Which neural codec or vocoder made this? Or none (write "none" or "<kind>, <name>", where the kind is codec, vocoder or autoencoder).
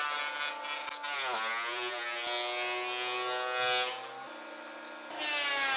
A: none